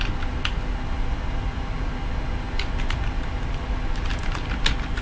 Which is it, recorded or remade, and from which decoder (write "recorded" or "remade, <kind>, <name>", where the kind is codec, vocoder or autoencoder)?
recorded